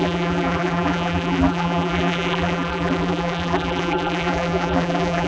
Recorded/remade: remade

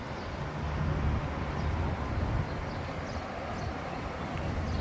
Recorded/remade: recorded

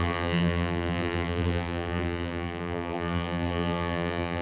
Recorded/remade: remade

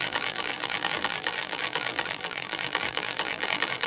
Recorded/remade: remade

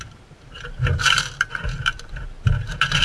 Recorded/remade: remade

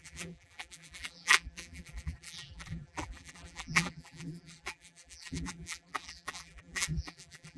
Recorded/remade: remade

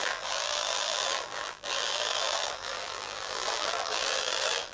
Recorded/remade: remade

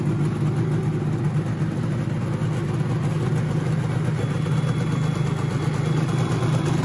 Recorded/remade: recorded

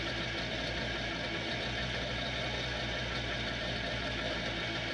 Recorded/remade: recorded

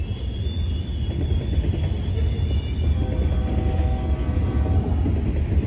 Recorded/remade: recorded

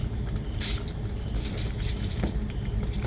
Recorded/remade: remade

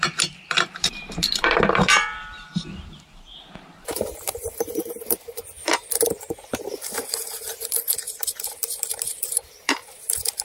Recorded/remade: remade